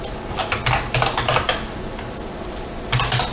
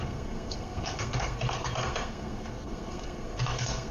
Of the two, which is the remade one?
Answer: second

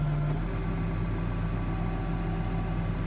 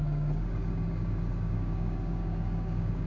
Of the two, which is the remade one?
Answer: second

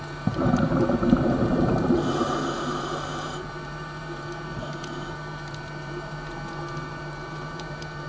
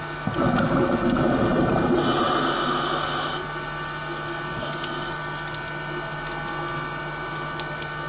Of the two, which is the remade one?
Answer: first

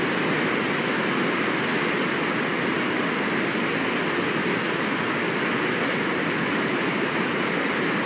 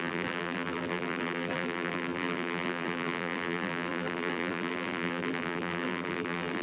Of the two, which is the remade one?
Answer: second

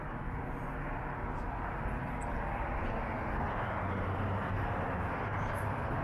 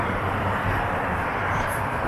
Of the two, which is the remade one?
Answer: second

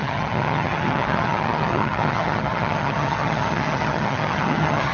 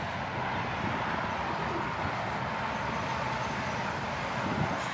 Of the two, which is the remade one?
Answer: first